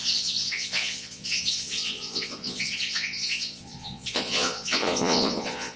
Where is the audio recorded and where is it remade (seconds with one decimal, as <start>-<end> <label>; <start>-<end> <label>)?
0.0-5.8 remade